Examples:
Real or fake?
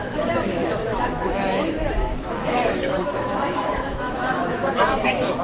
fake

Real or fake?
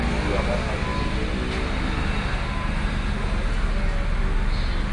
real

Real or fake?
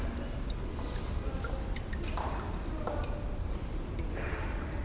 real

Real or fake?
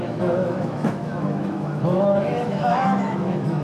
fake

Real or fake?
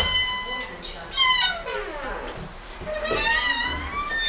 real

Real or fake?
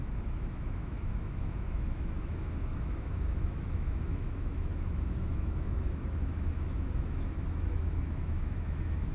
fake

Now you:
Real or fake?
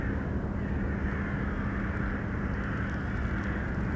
real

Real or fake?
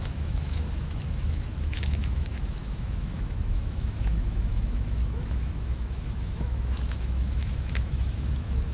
fake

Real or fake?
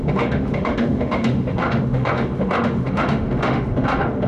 fake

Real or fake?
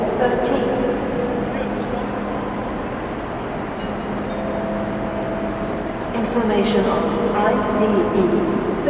real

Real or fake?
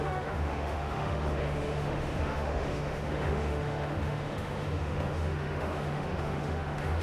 fake